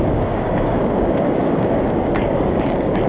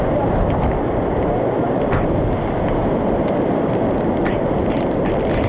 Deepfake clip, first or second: first